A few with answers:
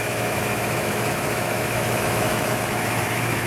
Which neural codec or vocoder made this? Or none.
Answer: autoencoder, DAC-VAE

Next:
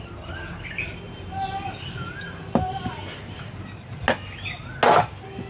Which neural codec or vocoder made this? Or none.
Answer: none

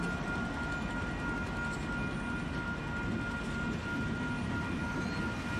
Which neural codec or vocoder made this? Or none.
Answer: none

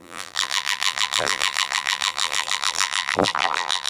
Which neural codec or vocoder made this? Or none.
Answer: vocoder, BigVGAN v2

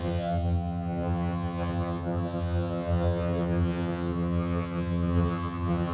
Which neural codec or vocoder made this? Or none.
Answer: vocoder, HiFi-GAN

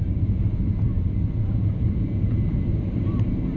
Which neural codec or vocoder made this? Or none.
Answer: vocoder, BigVGAN v2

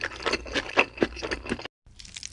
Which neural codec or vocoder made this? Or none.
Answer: none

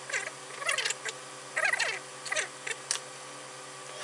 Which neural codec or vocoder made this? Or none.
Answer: none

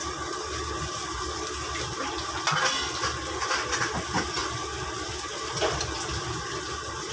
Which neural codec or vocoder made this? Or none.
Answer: none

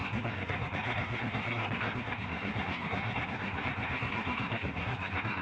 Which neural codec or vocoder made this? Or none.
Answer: codec, SNAC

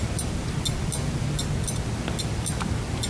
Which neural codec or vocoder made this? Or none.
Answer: none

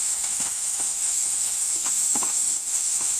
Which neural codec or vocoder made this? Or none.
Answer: autoencoder, DAC-VAE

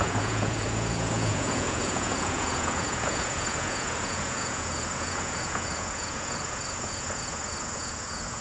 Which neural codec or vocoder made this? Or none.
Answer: vocoder, Vocos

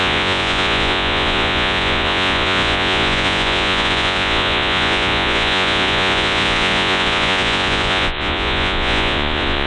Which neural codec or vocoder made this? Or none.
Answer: vocoder, Vocos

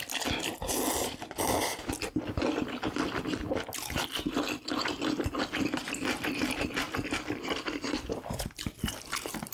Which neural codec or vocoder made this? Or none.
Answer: none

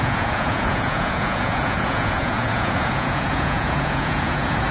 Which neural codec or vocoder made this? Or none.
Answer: vocoder, Vocos